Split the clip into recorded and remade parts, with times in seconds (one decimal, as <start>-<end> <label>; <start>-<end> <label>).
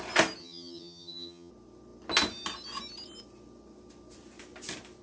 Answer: 0.0-0.4 recorded; 0.4-1.5 remade; 1.5-5.0 recorded